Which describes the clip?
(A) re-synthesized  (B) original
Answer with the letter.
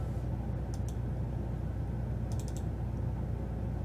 B